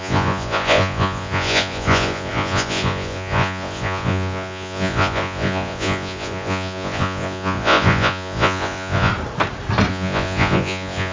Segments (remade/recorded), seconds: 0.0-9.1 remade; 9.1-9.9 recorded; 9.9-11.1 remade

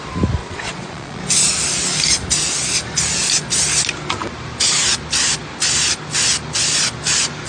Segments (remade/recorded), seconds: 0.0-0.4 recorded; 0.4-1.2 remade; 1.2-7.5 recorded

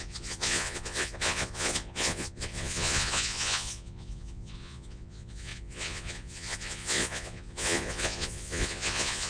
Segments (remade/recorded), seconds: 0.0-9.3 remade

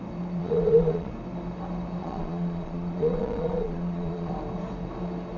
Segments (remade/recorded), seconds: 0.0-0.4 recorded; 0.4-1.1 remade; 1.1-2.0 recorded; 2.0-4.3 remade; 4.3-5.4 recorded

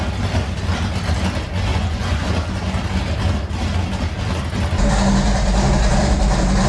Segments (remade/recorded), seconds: 0.0-1.7 recorded; 1.7-2.3 remade; 2.3-6.7 recorded